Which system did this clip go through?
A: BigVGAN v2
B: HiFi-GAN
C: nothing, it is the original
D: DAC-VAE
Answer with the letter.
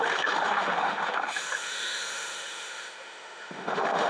D